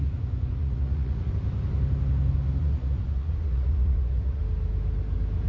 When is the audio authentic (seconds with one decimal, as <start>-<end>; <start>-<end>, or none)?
0.0-0.6; 1.3-2.6; 4.4-5.5